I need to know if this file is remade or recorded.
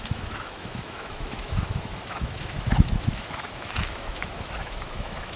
remade